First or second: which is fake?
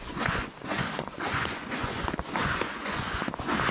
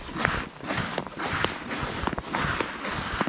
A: first